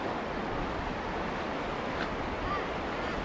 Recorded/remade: recorded